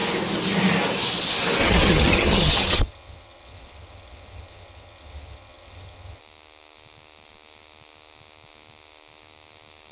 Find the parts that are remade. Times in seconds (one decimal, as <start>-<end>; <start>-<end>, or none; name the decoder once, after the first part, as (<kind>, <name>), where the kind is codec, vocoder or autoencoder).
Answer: 1.6-6.2 (vocoder, HiFi-GAN)

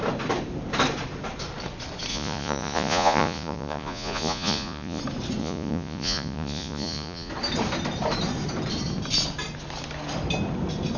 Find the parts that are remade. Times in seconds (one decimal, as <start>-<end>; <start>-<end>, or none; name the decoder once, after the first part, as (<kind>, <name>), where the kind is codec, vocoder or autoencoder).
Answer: 2.1-5.0 (vocoder, Vocos); 5.4-7.3

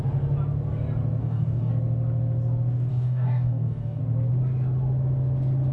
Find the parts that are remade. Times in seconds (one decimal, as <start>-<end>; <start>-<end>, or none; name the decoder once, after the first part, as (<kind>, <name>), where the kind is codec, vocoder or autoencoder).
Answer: 1.2-1.7 (codec, DAC); 2.9-4.0

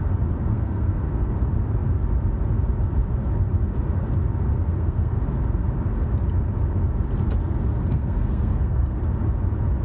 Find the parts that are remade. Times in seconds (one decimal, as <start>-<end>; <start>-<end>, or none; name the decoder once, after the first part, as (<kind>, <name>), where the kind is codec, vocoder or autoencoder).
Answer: 0.5-1.3 (codec, SNAC); 4.5-5.2; 7.9-9.0

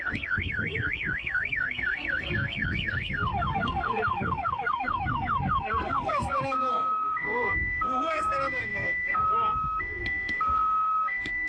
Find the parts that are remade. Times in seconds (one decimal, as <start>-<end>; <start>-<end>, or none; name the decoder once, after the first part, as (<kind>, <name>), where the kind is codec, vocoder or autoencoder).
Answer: 0.0-11.5 (codec, SNAC)